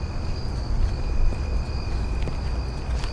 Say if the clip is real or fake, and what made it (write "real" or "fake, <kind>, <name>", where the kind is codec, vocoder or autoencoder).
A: real